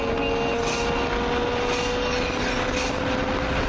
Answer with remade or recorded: recorded